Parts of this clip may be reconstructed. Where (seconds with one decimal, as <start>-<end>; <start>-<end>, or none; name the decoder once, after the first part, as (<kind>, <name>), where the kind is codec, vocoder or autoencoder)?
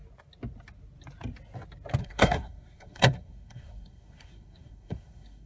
2.0-5.5 (codec, SNAC)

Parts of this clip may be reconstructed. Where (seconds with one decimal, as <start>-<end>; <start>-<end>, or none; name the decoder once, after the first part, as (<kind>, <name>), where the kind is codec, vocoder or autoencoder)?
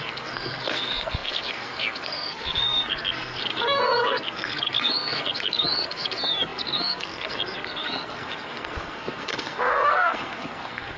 0.0-11.0 (codec, SNAC)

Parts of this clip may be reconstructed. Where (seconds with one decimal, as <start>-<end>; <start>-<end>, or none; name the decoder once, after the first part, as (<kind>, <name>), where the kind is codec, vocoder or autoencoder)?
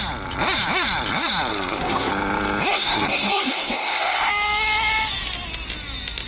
1.5-2.1 (codec, SNAC); 2.7-4.3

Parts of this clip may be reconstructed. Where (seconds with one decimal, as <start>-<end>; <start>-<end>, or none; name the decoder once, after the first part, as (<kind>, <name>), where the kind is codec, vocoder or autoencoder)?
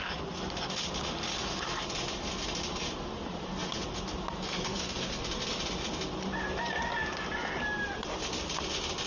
4.5-5.2 (codec, SNAC)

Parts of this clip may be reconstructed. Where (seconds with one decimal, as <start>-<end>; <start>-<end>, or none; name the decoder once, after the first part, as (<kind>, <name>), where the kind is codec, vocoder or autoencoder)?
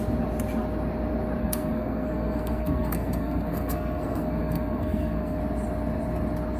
1.4-5.4 (codec, SNAC)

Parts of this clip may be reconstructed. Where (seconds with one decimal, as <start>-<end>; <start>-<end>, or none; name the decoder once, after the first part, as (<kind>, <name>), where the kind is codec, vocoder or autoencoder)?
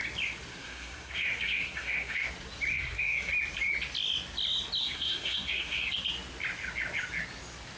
0.5-2.3 (codec, SNAC); 2.7-3.3; 4.8-5.9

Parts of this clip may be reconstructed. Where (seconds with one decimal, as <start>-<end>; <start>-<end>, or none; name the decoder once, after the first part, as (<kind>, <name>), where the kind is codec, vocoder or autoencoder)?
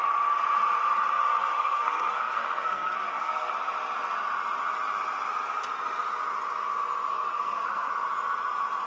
1.5-3.5 (codec, SNAC); 7.1-7.9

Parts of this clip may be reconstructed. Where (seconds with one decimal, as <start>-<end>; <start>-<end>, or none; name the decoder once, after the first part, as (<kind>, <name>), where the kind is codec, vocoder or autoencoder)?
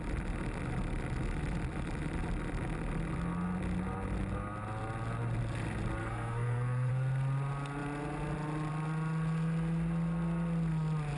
6.0-6.9 (codec, SNAC)